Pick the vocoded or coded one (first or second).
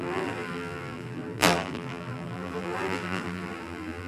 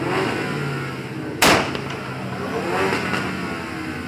first